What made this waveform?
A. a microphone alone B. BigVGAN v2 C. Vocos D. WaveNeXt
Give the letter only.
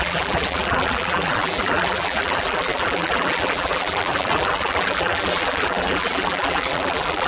B